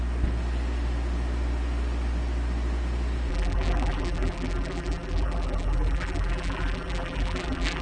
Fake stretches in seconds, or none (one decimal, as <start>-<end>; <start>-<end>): 3.3-7.8